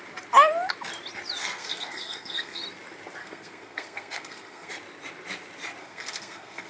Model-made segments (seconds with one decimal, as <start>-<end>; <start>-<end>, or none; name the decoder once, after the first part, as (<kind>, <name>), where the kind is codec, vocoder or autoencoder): 1.4-2.6 (codec, SNAC); 3.2-4.7; 5.8-6.7